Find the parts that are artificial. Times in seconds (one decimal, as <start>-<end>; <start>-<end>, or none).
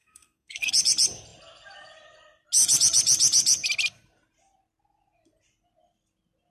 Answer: 0.0-0.7